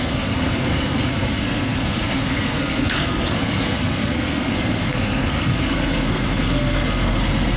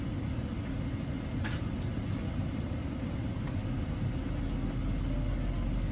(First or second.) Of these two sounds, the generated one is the first